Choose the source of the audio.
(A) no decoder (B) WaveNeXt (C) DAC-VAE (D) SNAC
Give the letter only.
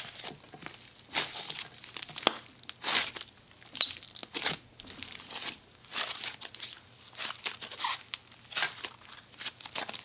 A